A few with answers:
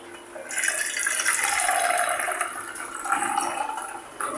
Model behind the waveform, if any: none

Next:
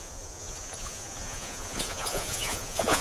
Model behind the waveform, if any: vocoder, Vocos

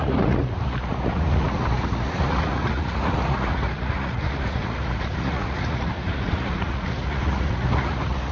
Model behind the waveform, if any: vocoder, Vocos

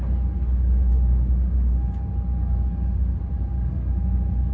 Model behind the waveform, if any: none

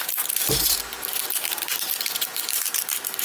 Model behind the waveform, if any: vocoder, BigVGAN v2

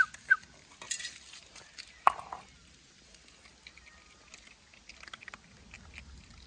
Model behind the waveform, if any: none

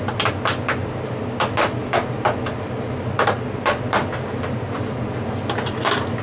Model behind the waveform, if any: none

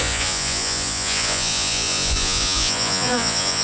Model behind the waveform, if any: vocoder, Vocos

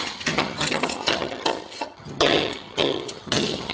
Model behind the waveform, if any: vocoder, HiFi-GAN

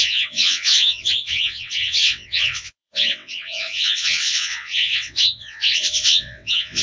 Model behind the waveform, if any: vocoder, WaveNeXt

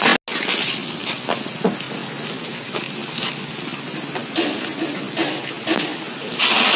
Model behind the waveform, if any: none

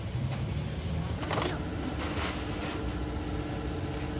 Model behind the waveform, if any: none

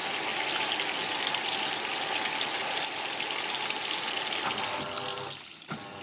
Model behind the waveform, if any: none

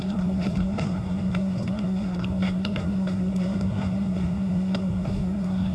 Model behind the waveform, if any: codec, SNAC